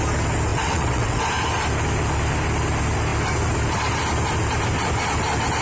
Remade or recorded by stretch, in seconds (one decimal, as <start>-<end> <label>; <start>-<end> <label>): 0.0-0.5 recorded; 0.5-1.2 remade; 1.2-5.6 recorded

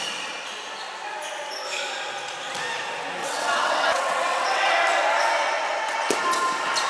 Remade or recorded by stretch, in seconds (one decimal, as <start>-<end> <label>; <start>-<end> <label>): 0.0-3.2 recorded; 3.2-4.7 remade; 4.7-6.9 recorded